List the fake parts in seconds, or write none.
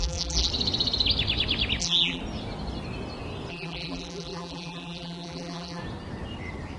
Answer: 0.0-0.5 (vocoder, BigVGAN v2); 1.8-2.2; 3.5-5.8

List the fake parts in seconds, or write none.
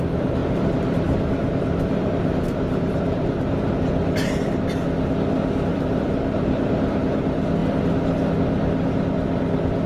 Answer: 0.4-3.7 (vocoder, BigVGAN v2); 5.7-7.0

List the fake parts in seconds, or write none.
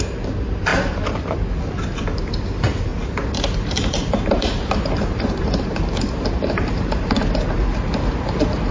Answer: 0.7-1.2 (vocoder, BigVGAN v2); 2.9-7.4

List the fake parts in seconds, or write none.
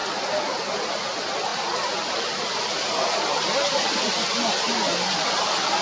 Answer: none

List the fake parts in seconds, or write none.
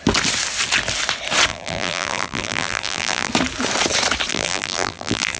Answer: 1.5-3.3 (vocoder, BigVGAN v2); 4.3-5.4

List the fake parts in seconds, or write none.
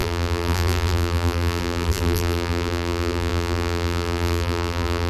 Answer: 0.0-5.1 (vocoder, BigVGAN v2)